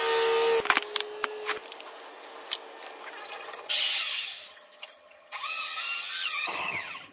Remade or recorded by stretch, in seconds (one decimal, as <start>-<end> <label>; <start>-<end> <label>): 0.0-3.2 recorded; 3.2-7.1 remade